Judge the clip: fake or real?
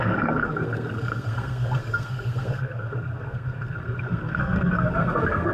fake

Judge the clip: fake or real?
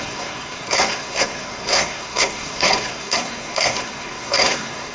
fake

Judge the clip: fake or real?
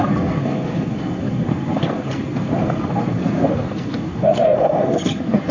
fake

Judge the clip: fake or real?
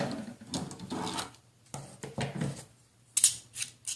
real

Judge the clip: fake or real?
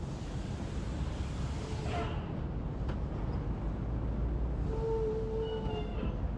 real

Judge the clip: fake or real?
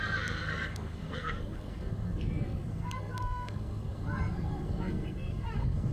fake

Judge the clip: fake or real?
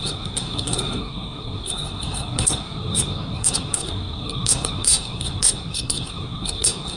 fake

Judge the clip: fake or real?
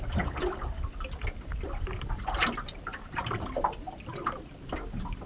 real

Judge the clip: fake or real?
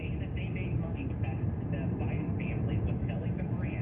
real